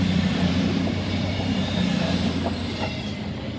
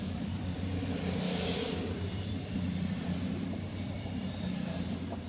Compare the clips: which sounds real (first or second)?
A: first